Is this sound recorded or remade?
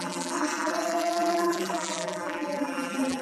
remade